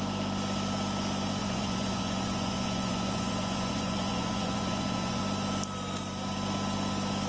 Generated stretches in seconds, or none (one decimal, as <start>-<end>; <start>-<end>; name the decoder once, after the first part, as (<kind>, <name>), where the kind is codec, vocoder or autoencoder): 1.4-5.2 (vocoder, Vocos)